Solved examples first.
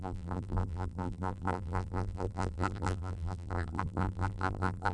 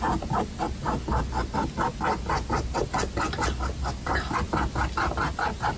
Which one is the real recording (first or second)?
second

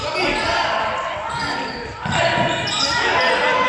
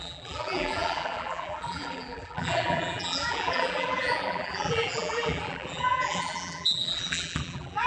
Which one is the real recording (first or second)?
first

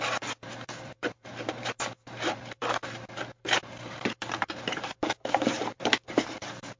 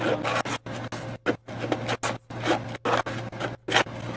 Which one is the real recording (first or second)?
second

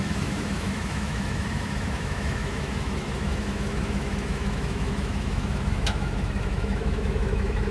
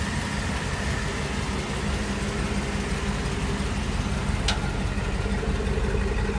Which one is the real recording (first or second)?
second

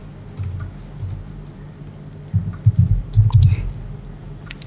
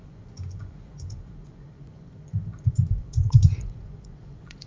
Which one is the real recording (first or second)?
first